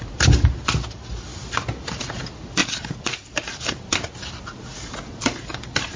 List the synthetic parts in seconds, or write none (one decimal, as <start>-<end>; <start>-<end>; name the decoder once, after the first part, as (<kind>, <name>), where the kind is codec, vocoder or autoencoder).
2.6-3.7 (vocoder, BigVGAN v2)